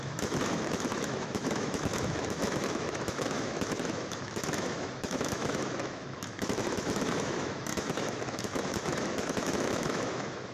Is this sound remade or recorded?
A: remade